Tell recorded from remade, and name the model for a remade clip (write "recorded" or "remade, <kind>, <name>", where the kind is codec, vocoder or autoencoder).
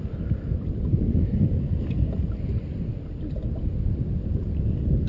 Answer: recorded